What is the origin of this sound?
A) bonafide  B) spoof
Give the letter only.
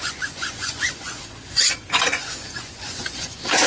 B